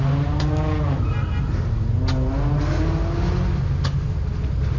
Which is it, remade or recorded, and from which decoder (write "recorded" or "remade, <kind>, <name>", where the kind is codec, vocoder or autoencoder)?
recorded